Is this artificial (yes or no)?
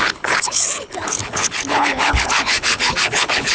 yes